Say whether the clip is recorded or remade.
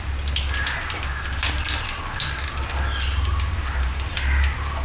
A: recorded